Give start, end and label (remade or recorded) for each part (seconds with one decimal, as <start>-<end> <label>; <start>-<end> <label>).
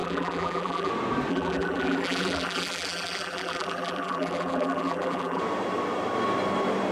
0.0-0.9 remade; 0.9-1.3 recorded; 1.3-5.4 remade; 5.4-6.9 recorded